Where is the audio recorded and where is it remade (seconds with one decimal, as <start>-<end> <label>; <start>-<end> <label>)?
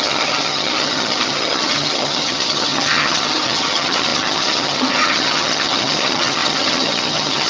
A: 0.0-7.5 remade